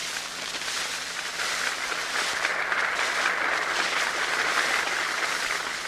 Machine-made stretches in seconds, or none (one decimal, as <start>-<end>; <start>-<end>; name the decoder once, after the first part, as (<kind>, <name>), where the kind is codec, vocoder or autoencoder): none